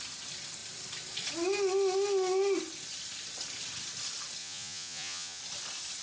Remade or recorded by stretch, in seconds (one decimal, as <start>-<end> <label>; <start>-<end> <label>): 0.0-4.4 recorded; 4.4-5.4 remade; 5.4-6.0 recorded